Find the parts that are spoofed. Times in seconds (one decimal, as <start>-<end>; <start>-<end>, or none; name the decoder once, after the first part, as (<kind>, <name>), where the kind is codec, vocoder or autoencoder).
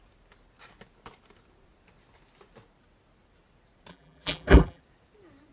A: 3.9-4.8 (vocoder, BigVGAN v2)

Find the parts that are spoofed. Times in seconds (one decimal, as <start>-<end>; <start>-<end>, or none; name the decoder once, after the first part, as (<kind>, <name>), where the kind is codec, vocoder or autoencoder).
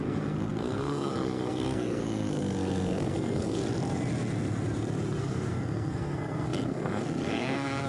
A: 0.0-3.6 (codec, SNAC); 5.2-7.9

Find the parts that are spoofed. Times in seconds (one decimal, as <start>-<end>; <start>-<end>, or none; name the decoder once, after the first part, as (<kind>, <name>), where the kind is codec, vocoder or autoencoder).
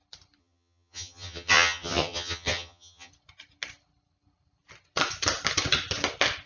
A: 0.4-3.1 (vocoder, HiFi-GAN)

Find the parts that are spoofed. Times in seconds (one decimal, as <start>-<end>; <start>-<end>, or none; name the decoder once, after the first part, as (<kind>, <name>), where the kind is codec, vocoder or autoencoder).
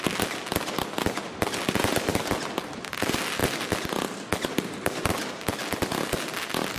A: none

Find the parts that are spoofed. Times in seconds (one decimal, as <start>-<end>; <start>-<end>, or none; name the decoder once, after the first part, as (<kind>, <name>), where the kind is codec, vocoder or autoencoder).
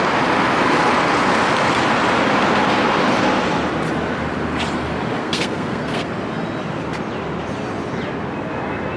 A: 5.2-6.1 (codec, SNAC)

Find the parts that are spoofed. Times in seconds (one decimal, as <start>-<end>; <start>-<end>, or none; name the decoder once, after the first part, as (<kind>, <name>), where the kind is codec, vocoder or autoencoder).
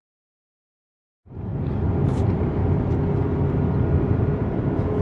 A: 0.0-1.5 (vocoder, BigVGAN v2); 2.1-2.6; 4.0-5.0